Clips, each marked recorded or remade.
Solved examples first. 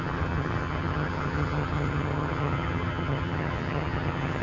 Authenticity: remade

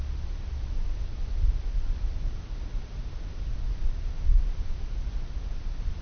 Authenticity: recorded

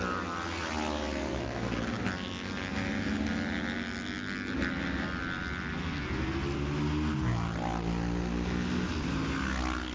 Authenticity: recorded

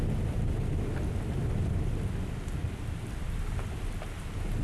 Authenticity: recorded